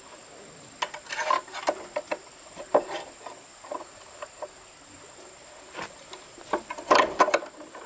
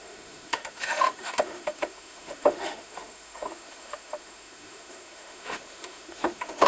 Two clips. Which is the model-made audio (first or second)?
second